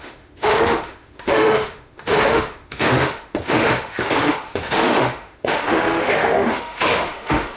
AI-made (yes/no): yes